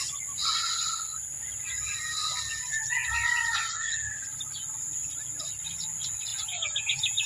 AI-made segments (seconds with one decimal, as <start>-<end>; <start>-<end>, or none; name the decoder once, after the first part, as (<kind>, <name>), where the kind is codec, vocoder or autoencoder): 6.3-7.3 (vocoder, Vocos)